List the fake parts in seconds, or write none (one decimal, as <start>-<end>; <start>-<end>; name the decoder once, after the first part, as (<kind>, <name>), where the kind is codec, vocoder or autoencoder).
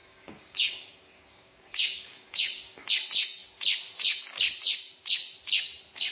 0.0-2.9 (codec, DAC)